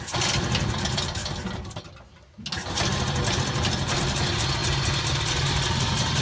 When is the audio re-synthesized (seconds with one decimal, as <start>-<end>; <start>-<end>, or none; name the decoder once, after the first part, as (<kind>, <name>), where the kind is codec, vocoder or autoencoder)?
none